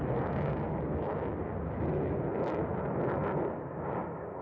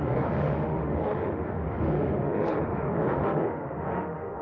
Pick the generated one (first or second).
second